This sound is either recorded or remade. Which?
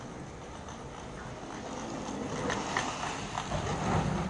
recorded